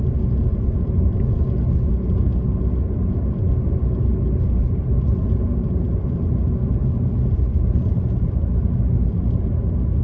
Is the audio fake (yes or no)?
no